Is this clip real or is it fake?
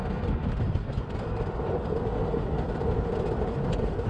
real